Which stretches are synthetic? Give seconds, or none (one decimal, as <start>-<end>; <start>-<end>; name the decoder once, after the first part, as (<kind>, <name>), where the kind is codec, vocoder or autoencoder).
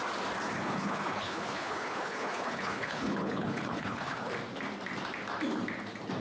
0.6-4.3 (codec, HILCodec)